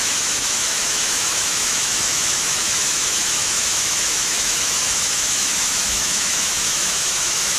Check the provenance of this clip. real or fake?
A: fake